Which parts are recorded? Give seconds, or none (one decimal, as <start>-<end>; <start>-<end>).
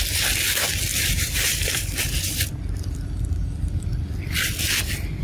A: 0.0-0.9; 2.4-5.2